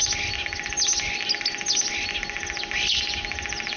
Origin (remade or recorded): recorded